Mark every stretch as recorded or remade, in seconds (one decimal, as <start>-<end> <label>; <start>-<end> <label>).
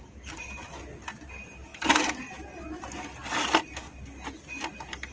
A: 0.0-5.1 recorded